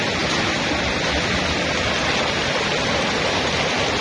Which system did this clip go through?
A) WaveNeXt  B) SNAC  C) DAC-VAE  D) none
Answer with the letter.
D